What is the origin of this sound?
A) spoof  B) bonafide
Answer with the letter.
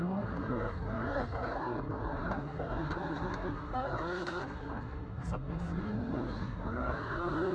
A